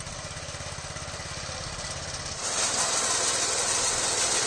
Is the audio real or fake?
real